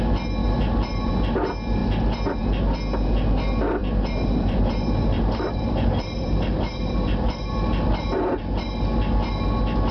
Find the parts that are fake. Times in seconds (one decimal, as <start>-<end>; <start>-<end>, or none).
0.4-1.1; 3.8-8.4